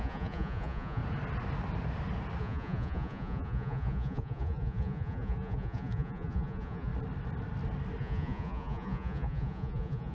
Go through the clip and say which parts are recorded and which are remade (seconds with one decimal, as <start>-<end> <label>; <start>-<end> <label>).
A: 0.0-1.0 remade; 1.0-2.4 recorded; 2.4-6.9 remade; 6.9-8.0 recorded; 8.0-10.1 remade

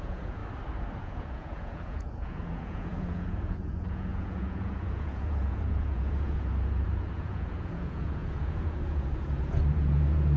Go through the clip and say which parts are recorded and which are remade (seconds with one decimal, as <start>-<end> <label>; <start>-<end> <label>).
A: 0.0-0.4 remade; 0.4-1.0 recorded; 1.0-10.4 remade

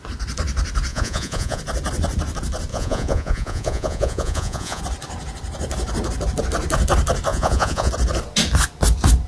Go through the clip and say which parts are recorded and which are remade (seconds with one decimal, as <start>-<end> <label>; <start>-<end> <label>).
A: 0.0-0.9 recorded; 0.9-1.6 remade; 1.6-2.7 recorded; 2.7-4.8 remade; 4.8-7.3 recorded; 7.3-7.9 remade; 7.9-9.3 recorded

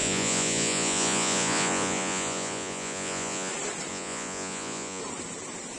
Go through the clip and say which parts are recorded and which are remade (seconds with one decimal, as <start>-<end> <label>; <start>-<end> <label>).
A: 0.0-3.5 remade; 3.5-3.9 recorded; 3.9-5.0 remade; 5.0-5.8 recorded